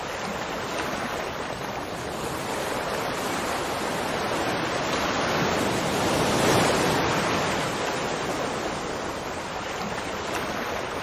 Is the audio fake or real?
real